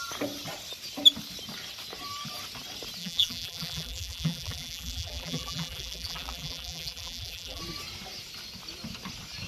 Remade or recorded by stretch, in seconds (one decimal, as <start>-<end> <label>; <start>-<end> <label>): 0.0-3.0 recorded; 3.0-7.6 remade; 7.6-9.5 recorded